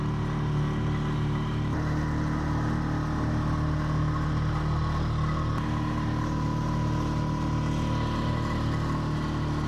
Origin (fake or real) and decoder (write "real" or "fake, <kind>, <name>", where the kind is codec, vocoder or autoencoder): real